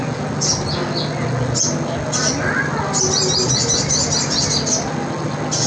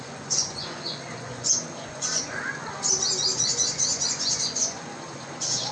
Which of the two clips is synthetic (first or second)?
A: second